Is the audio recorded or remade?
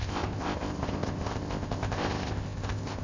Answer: remade